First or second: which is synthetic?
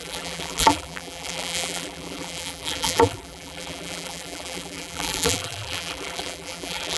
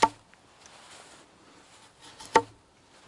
first